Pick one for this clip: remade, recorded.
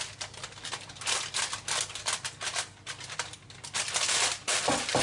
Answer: recorded